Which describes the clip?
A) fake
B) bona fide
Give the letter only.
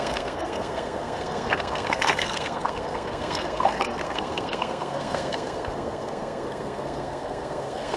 A